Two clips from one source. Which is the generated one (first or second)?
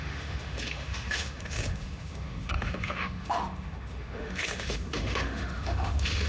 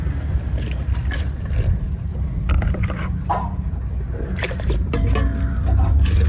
first